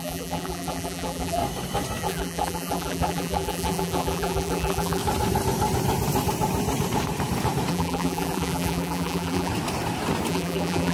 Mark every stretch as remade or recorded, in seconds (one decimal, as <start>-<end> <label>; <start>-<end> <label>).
0.0-1.4 remade; 1.4-2.0 recorded; 2.0-5.0 remade; 5.0-7.7 recorded; 7.7-9.5 remade; 9.5-10.3 recorded; 10.3-10.9 remade